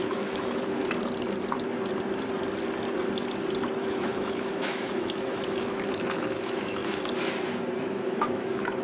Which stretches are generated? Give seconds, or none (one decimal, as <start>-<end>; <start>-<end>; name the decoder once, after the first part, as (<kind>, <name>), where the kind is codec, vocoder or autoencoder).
0.0-0.8 (autoencoder, DAC-VAE); 3.8-6.8; 7.8-8.8